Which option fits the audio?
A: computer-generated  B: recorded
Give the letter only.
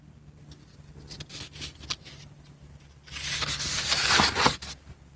B